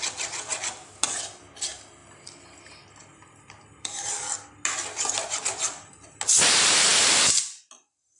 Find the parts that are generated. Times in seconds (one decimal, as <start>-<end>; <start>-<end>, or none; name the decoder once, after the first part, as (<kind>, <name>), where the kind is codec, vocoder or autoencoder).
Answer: none